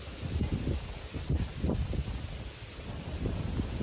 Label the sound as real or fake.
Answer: real